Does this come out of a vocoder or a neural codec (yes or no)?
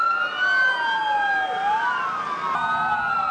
no